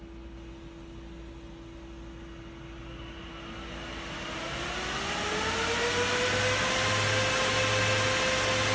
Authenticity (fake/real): real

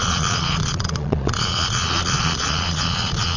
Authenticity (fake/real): fake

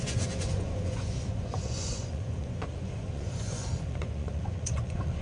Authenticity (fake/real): fake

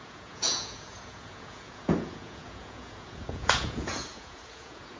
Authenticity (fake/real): fake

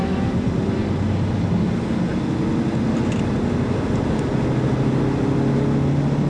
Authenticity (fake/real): real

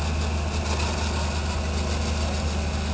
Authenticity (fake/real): real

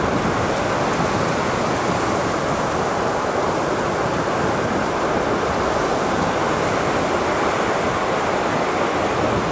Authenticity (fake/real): real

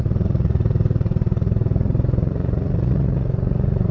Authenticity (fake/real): fake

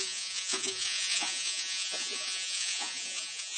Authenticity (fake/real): fake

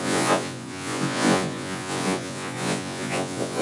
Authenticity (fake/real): fake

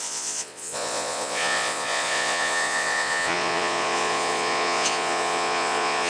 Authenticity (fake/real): fake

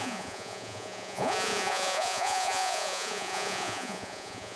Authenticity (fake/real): fake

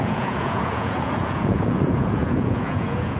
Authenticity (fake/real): fake